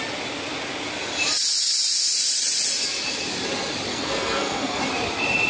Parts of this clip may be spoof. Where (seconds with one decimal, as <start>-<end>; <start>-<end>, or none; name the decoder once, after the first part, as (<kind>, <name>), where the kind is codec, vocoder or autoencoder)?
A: 3.9-4.8 (codec, SNAC)